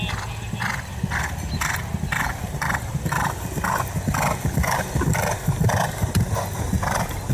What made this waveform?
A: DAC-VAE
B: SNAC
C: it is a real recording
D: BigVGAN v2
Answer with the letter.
C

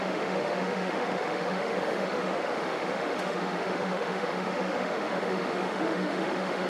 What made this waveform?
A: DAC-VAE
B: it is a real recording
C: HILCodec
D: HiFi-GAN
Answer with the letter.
A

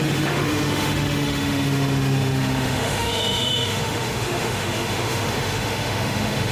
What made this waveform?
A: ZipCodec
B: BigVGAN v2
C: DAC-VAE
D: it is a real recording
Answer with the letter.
C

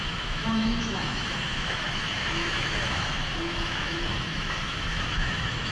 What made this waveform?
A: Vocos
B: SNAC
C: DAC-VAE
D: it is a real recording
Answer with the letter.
C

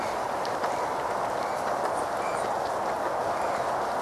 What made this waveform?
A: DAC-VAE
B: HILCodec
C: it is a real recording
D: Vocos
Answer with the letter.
C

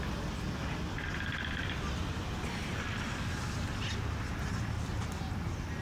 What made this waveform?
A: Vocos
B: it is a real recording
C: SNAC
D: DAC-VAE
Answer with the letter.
B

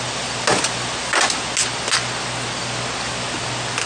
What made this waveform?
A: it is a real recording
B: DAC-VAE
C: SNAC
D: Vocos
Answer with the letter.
A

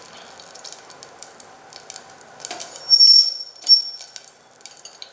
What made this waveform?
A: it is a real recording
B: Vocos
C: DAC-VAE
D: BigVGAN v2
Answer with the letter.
A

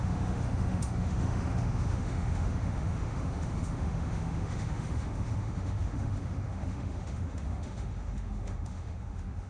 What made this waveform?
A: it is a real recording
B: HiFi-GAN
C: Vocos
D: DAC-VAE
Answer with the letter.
D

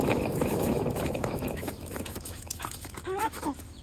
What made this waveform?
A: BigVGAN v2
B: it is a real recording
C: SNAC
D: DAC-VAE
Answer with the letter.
D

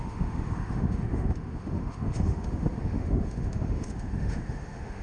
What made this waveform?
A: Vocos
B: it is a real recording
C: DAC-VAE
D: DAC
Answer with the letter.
C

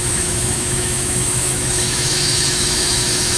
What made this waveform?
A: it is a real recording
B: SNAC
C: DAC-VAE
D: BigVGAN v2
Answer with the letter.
C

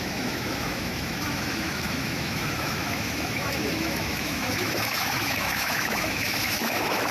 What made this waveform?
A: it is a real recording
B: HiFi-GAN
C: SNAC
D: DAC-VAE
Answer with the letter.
D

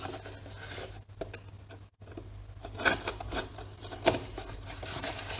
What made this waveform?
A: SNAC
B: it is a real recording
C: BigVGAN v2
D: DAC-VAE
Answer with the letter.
B